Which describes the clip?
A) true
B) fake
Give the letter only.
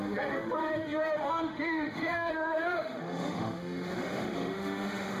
B